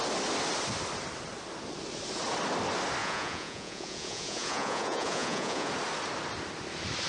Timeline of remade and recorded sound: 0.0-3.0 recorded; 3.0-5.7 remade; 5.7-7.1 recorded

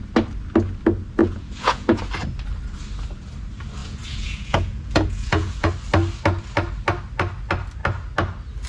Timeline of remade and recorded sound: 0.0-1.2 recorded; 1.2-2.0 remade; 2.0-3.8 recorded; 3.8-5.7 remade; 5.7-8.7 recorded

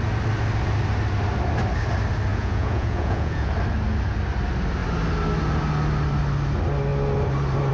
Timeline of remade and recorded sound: 0.0-2.3 recorded; 2.3-3.5 remade; 3.5-7.7 recorded

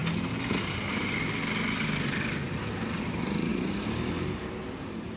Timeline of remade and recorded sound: 0.0-5.2 recorded